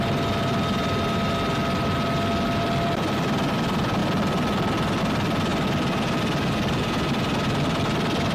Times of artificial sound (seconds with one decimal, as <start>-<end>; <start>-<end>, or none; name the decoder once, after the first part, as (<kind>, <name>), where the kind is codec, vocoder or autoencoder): none